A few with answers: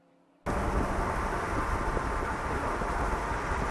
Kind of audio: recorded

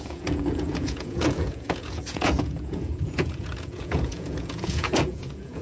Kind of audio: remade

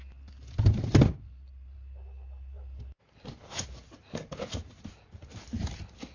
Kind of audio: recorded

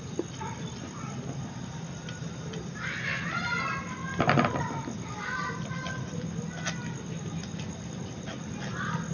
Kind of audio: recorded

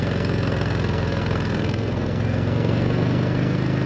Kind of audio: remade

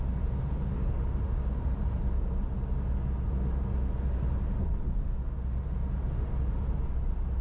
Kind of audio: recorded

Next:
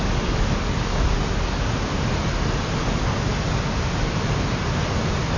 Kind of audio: recorded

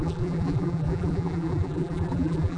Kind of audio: remade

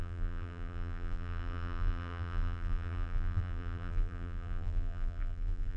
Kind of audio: remade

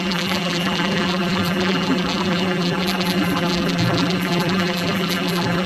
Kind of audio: remade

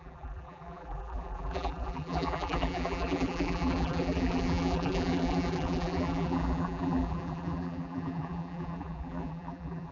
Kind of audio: remade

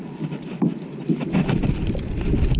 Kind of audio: recorded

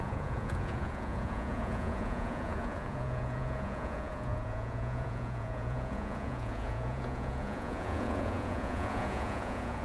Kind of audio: remade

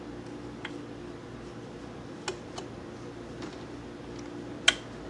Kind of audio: recorded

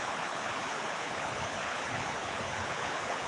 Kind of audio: remade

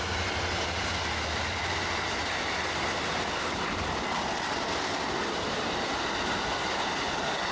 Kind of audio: recorded